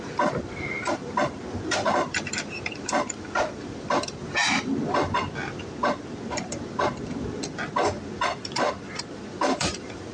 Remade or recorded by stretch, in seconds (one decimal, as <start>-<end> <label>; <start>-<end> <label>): 0.0-4.4 remade; 4.4-9.4 recorded; 9.4-10.1 remade

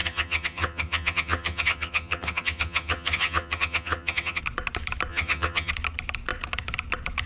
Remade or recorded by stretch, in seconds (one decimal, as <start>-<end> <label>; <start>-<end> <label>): 0.0-4.4 remade; 4.4-5.1 recorded; 5.1-5.7 remade; 5.7-7.3 recorded

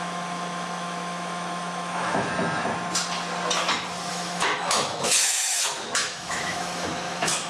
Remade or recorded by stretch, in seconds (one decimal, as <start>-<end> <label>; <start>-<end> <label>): 0.0-2.3 remade; 2.3-4.1 recorded; 4.1-7.5 remade

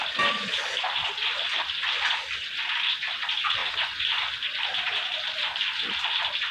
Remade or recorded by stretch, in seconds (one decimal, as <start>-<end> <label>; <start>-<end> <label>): 0.0-6.5 recorded

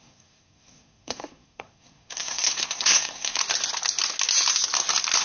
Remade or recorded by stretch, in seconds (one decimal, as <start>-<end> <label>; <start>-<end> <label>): 0.0-3.4 remade; 3.4-5.2 recorded

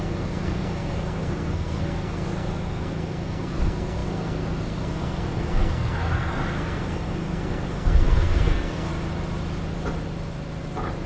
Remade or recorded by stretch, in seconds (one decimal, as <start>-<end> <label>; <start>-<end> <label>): 0.0-8.9 remade; 8.9-11.1 recorded

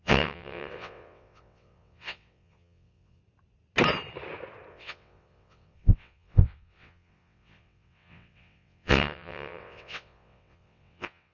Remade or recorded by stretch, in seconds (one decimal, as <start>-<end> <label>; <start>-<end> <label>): 0.0-3.2 remade; 3.2-4.7 recorded; 4.7-11.3 remade